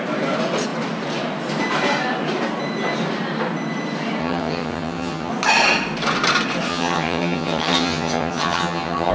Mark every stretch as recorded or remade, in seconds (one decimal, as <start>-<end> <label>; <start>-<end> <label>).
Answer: 0.0-4.2 recorded; 4.2-5.3 remade; 5.3-6.7 recorded; 6.7-9.1 remade